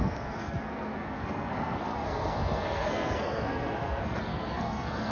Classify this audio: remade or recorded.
remade